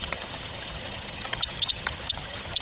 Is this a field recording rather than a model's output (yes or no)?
no